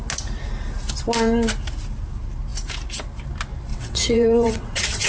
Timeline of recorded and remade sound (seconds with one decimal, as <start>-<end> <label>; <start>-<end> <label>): 0.0-3.7 recorded; 3.7-5.1 remade